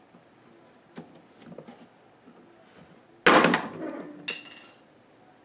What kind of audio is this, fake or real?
real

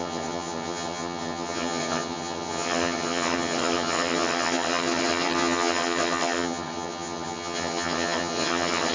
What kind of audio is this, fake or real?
fake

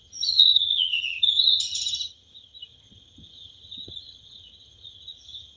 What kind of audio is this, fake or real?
fake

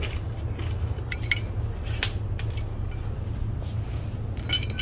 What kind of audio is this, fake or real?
real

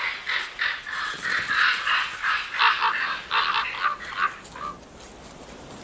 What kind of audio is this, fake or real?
real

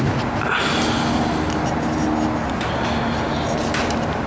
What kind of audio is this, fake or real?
real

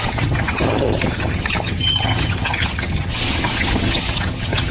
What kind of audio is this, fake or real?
fake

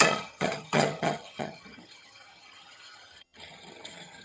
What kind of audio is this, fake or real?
fake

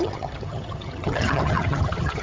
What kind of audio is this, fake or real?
fake